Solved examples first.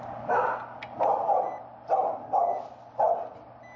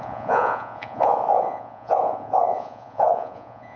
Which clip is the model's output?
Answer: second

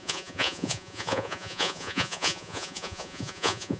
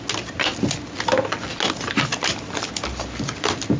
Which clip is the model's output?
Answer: first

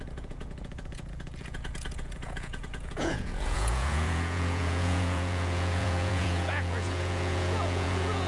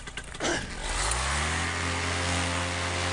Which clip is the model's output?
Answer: first